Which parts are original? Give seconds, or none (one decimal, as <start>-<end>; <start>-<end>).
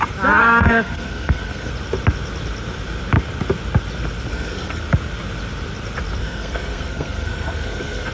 0.0-0.4; 1.7-4.3; 4.8-6.2